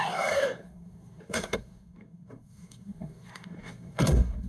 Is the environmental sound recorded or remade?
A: remade